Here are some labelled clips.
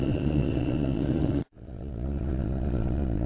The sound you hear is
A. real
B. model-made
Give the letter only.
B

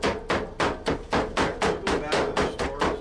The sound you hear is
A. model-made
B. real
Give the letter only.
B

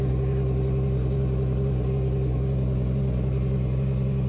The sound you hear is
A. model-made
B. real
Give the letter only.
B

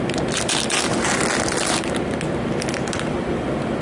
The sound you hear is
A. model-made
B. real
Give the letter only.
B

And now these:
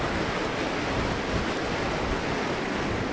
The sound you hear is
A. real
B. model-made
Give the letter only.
A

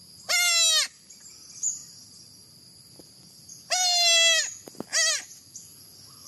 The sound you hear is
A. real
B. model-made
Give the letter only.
A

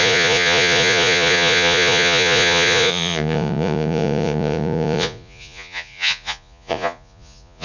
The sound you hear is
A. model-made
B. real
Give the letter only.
A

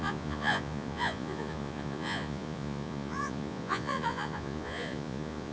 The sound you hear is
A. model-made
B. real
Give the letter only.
A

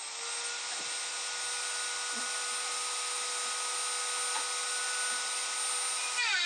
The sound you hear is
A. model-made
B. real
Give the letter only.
B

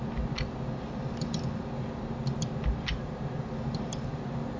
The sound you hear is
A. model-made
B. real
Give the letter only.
B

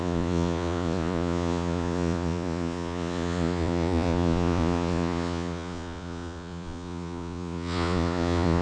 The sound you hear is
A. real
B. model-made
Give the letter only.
B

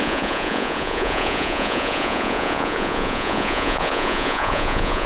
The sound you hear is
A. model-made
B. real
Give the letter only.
A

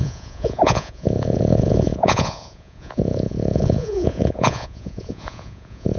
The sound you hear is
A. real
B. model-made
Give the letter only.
B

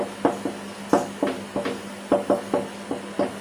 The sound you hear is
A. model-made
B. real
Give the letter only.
B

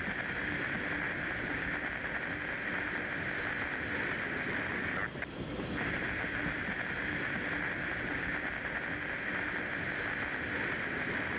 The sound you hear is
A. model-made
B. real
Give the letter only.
B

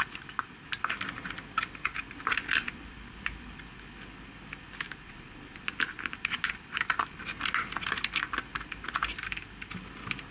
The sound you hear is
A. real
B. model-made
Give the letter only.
A